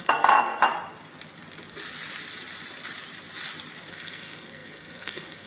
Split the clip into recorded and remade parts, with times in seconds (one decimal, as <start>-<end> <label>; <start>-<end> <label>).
0.0-0.6 remade; 0.6-3.9 recorded; 3.9-5.5 remade